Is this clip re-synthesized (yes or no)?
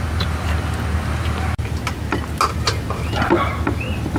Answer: no